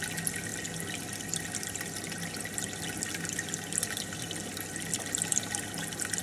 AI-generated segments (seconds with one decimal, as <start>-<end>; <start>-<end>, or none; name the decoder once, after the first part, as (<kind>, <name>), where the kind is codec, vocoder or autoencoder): none